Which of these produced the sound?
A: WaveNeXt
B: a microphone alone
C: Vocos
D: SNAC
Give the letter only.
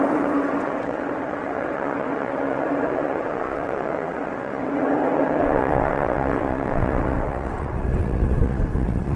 A